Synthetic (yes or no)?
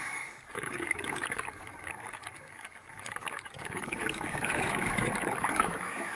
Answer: yes